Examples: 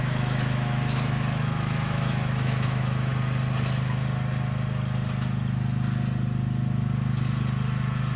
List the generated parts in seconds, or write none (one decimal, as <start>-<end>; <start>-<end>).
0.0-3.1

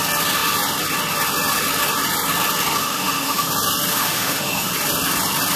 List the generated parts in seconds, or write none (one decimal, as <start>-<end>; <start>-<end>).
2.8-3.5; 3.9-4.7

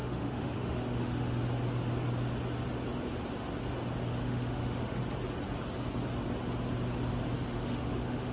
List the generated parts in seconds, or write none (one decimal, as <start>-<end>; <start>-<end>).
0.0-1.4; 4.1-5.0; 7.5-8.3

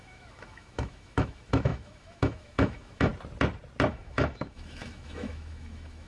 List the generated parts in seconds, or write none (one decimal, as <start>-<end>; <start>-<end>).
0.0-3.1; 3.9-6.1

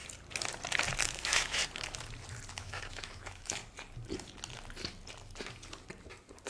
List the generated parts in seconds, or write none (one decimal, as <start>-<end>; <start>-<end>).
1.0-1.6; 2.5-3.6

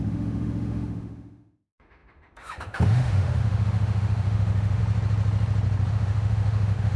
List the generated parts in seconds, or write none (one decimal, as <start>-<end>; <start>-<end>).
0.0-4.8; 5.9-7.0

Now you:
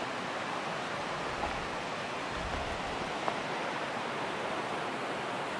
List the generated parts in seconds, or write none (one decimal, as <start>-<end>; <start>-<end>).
none

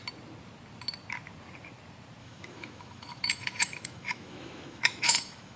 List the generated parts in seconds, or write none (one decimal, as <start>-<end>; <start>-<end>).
2.2-5.6